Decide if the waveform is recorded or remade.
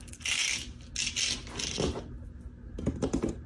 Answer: recorded